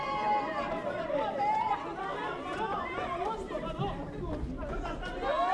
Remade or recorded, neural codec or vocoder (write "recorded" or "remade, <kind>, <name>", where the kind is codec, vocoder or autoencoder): recorded